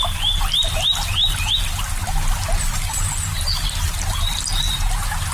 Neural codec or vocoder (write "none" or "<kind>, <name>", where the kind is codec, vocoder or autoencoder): none